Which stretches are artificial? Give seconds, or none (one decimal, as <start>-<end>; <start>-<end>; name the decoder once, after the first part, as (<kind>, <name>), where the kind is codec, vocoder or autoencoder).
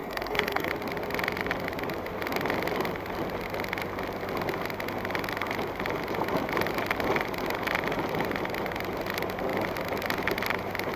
0.0-0.7 (codec, SNAC)